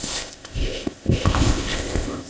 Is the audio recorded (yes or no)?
no